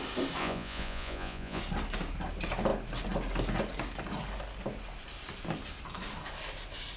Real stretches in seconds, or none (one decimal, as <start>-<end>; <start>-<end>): 0.0-0.4; 1.6-7.0